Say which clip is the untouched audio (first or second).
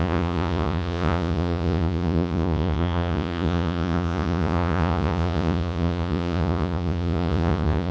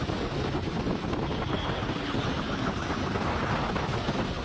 second